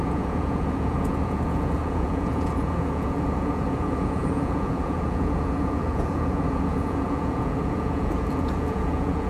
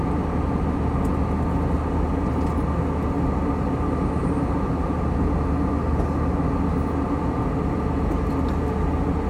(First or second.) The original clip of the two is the second